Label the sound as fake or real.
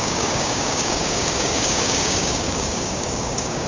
fake